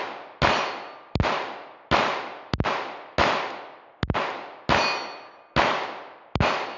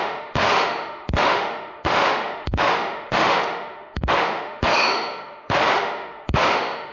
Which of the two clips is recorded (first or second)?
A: first